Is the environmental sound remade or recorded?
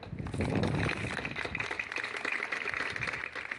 recorded